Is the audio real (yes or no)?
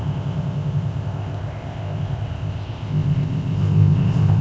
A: no